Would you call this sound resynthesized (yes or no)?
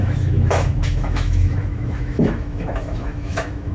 yes